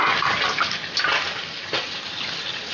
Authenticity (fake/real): real